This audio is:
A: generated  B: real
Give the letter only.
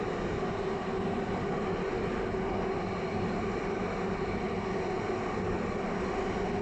B